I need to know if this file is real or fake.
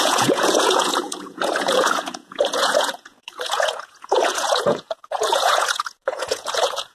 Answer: fake